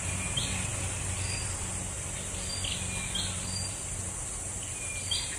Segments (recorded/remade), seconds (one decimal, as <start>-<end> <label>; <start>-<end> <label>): 0.0-5.4 recorded